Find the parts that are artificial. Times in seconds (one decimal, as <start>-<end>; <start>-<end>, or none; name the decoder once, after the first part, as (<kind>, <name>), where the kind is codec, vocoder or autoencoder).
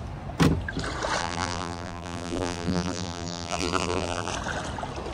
1.2-4.3 (vocoder, BigVGAN v2)